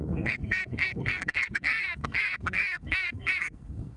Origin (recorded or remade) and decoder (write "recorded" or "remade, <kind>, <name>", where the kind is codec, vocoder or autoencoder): remade, codec, SNAC